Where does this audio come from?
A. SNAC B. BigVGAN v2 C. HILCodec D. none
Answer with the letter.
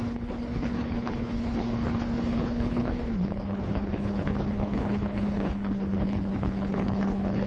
C